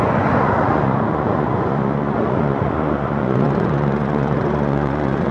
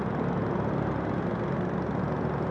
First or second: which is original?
second